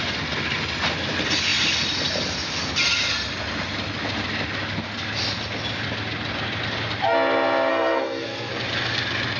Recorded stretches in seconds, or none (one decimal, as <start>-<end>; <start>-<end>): 0.0-7.7; 8.5-9.4